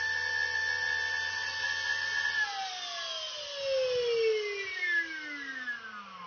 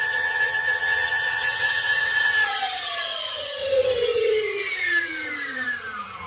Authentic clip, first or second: first